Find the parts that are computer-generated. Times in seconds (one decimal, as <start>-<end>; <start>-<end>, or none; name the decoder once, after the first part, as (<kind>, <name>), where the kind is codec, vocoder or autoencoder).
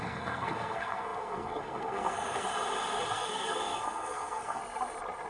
0.0-2.5 (codec, SNAC); 3.1-4.6